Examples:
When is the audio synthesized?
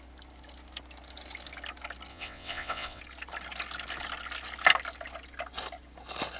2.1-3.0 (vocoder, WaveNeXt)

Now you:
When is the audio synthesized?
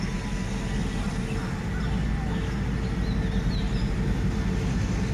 none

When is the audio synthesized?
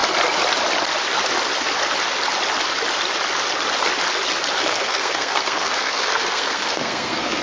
4.6-7.4 (codec, SNAC)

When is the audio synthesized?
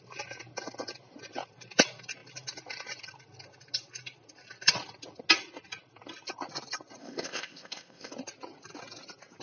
7.0-8.1 (codec, ZipCodec)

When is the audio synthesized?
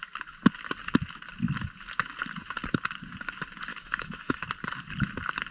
3.7-4.4 (autoencoder, DAC-VAE)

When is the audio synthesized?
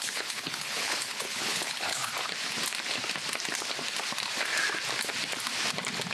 0.0-2.1 (codec, HILCodec)